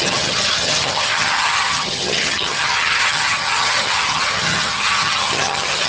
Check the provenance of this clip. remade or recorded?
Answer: remade